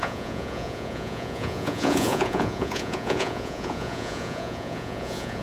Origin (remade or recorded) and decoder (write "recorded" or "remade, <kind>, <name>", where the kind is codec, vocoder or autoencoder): remade, vocoder, Vocos